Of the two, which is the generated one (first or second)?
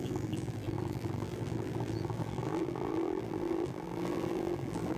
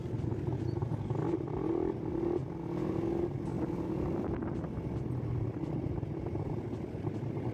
first